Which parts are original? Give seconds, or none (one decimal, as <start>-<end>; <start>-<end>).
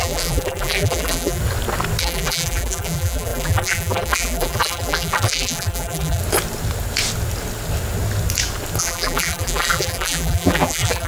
1.4-2.0; 6.2-8.8